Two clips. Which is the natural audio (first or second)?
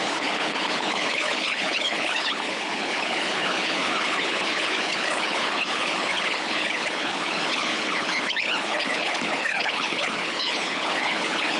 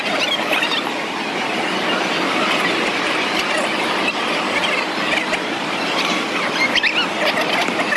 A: second